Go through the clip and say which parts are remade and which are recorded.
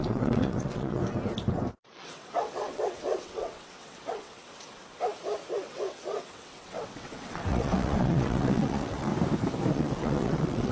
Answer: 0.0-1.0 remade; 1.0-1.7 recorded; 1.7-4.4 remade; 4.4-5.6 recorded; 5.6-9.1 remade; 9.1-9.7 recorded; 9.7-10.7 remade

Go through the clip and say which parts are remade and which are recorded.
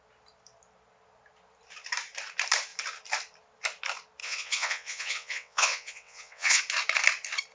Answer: 0.0-4.2 recorded; 4.2-6.6 remade; 6.6-7.5 recorded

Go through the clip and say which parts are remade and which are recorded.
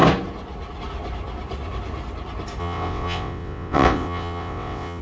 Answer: 0.0-2.6 recorded; 2.6-5.0 remade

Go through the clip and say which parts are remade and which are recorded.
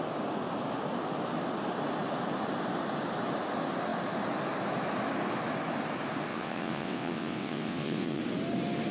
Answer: 0.0-6.3 recorded; 6.3-8.2 remade; 8.2-8.9 recorded